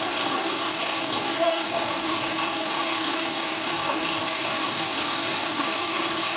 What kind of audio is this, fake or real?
fake